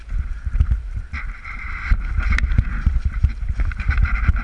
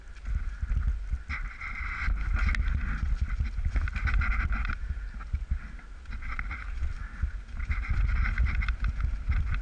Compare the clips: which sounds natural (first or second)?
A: second